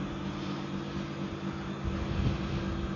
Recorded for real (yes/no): yes